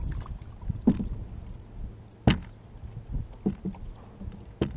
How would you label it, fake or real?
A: real